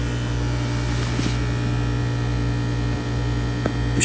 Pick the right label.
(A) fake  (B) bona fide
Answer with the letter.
B